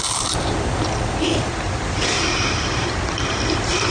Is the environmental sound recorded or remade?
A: remade